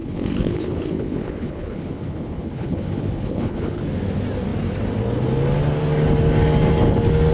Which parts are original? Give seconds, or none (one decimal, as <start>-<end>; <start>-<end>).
3.8-7.3